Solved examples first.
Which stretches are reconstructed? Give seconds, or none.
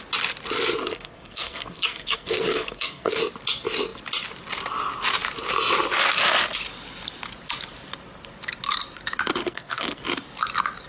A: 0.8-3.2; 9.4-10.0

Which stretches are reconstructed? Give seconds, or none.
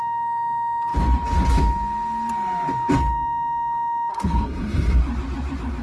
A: 4.1-5.0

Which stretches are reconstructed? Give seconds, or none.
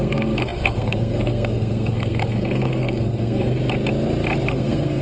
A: 0.0-3.6; 4.5-5.0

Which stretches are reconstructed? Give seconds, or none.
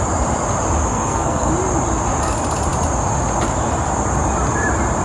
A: 0.9-1.5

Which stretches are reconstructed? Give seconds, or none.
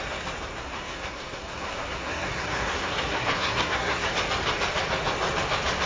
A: 0.6-4.1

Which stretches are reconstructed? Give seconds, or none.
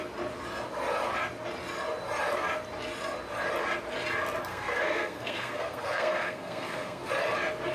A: 4.5-7.1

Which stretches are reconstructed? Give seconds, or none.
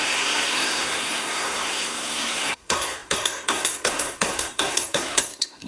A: 0.0-5.7